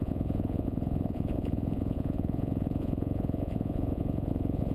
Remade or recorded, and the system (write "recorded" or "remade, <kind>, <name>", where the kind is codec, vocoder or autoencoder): remade, vocoder, Vocos